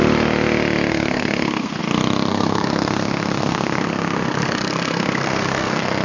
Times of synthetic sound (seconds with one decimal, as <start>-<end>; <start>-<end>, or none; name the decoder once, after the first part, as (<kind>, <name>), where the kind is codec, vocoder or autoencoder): 0.9-1.8 (codec, SNAC); 2.3-6.0